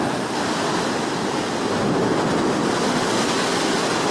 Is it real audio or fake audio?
real